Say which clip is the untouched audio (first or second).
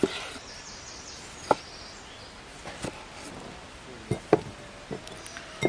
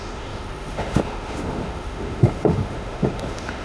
first